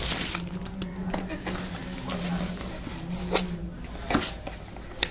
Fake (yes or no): no